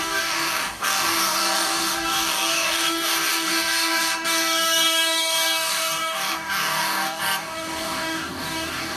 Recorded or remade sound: remade